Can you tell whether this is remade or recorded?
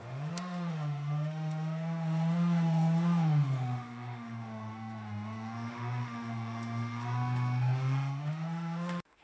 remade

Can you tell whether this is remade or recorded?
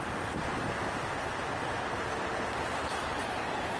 recorded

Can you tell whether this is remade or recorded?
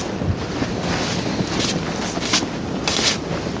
recorded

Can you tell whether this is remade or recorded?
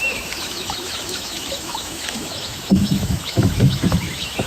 remade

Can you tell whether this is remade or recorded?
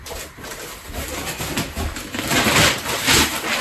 recorded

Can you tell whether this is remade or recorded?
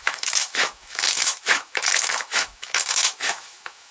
remade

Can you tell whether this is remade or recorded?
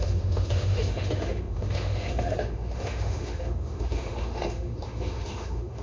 remade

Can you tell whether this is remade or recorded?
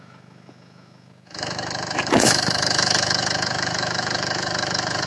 remade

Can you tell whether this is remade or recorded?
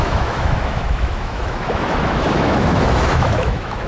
remade